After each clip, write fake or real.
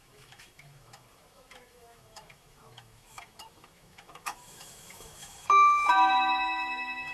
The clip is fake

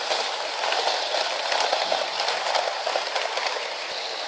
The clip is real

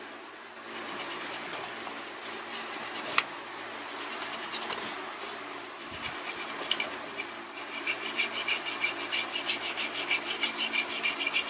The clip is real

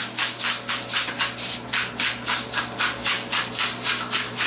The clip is real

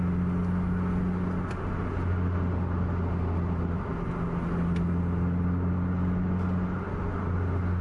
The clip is real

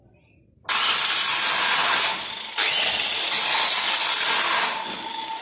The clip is real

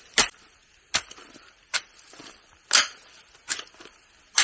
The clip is real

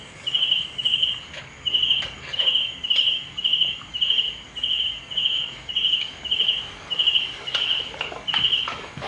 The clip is fake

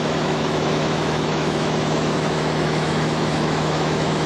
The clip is fake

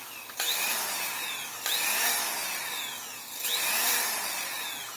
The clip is fake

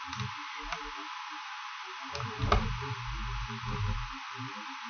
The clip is real